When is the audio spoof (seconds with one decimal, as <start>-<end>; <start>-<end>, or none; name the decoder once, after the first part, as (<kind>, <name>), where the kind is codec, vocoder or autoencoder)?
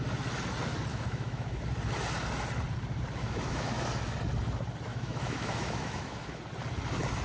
0.9-1.6 (autoencoder, DAC-VAE); 3.2-3.8; 4.9-6.4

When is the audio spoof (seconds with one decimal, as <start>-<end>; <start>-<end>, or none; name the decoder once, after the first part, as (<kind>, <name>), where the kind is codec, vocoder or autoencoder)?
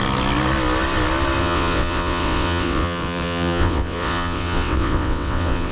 1.4-5.7 (vocoder, WaveNeXt)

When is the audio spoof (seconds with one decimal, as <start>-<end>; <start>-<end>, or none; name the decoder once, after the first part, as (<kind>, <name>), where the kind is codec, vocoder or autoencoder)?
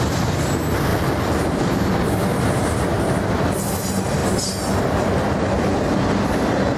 4.2-5.7 (vocoder, BigVGAN v2)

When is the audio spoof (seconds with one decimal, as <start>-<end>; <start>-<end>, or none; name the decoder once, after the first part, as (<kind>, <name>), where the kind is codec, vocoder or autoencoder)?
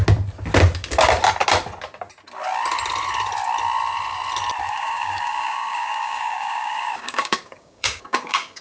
4.7-8.6 (codec, DAC)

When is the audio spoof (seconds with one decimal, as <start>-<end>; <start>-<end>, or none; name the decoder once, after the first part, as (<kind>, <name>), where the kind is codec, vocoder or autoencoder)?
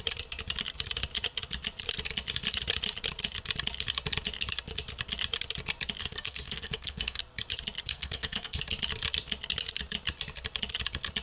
6.0-7.2 (codec, SNAC); 7.9-8.6